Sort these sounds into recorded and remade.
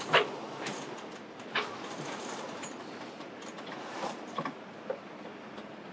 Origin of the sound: recorded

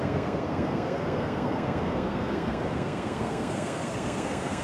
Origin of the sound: remade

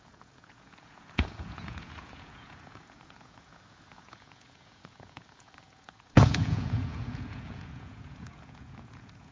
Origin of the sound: remade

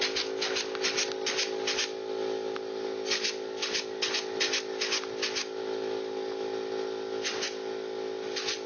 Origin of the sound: recorded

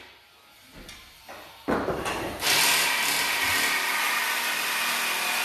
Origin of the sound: recorded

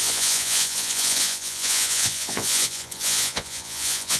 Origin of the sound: remade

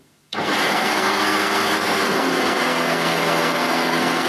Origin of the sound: remade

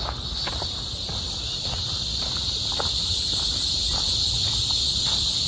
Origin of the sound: recorded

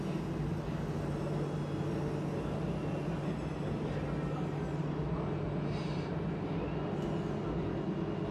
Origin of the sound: recorded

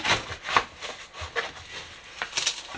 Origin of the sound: recorded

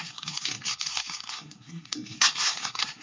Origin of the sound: remade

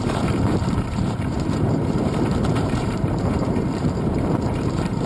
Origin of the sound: remade